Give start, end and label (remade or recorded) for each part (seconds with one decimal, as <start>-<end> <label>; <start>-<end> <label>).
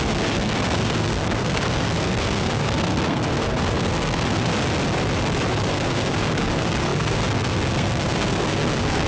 0.0-4.5 remade; 4.5-5.7 recorded; 5.7-9.1 remade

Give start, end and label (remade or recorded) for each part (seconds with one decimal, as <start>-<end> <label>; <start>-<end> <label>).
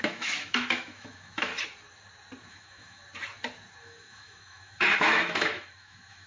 0.0-1.5 remade; 1.5-2.5 recorded; 2.5-3.0 remade; 3.0-3.8 recorded; 3.8-6.3 remade